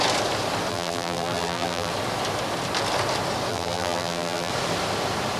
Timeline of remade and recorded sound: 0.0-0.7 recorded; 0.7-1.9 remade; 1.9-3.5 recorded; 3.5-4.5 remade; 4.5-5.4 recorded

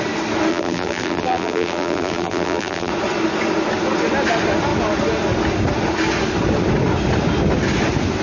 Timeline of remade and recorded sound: 0.0-0.5 recorded; 0.5-2.9 remade; 2.9-8.2 recorded

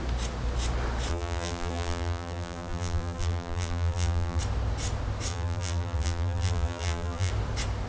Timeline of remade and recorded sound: 0.0-1.1 recorded; 1.1-4.4 remade; 4.4-5.3 recorded; 5.3-7.3 remade; 7.3-7.9 recorded

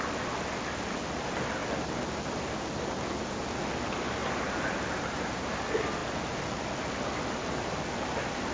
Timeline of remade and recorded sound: 0.0-4.2 recorded; 4.2-5.6 remade; 5.6-8.5 recorded